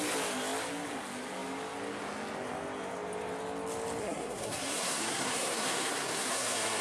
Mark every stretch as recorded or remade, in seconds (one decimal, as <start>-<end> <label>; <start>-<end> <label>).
0.0-4.0 recorded; 4.0-6.8 remade

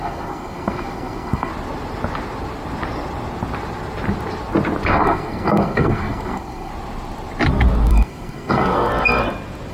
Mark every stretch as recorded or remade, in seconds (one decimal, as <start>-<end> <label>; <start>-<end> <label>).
0.0-1.5 remade; 1.5-4.9 recorded; 4.9-6.7 remade; 6.7-7.9 recorded; 7.9-8.9 remade; 8.9-9.7 recorded